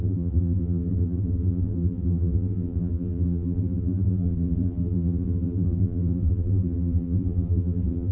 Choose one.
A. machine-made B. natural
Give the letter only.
A